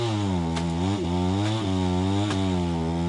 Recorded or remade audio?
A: recorded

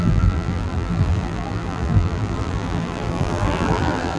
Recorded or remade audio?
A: remade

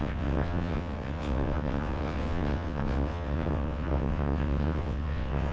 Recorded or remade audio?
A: remade